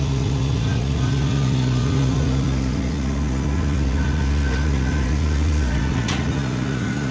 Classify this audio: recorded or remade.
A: remade